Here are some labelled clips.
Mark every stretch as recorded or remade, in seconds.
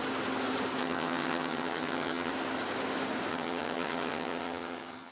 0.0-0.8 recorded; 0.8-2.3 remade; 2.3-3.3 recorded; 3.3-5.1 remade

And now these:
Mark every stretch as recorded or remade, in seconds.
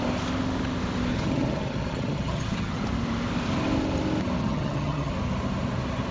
0.0-1.1 recorded; 1.1-2.8 remade; 2.8-4.4 recorded; 4.4-5.1 remade; 5.1-6.1 recorded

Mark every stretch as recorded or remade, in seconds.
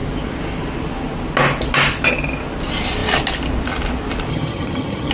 0.0-4.3 recorded; 4.3-5.1 remade